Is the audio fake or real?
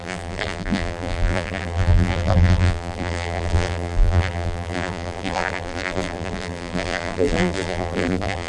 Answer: fake